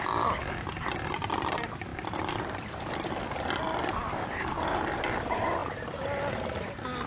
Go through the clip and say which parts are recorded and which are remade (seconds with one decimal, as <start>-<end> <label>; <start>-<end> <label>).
0.0-1.9 recorded; 1.9-2.6 remade; 2.6-7.1 recorded